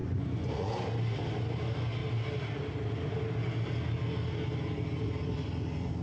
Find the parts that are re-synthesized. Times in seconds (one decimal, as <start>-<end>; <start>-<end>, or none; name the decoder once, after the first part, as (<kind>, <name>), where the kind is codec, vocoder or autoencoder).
0.0-0.7 (vocoder, Vocos)